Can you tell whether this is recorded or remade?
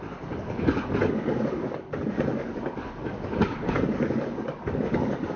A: remade